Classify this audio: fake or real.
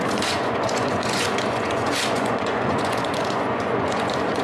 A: fake